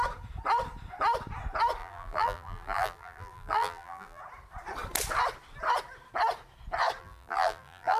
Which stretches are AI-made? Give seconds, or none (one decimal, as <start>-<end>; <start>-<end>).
1.8-4.2; 7.0-8.0